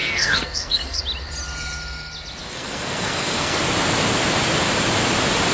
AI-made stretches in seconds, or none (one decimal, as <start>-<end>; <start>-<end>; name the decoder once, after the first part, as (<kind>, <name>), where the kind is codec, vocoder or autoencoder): 0.0-1.0 (codec, SNAC); 2.4-3.6